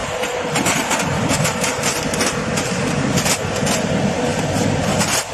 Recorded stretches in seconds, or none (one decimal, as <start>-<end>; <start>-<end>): 3.2-4.3